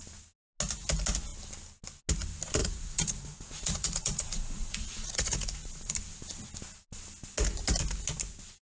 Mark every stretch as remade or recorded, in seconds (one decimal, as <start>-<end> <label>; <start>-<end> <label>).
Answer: 0.0-2.6 recorded; 2.6-5.9 remade; 5.9-8.8 recorded